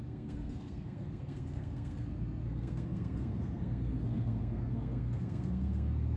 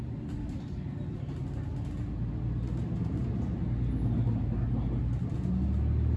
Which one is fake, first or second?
first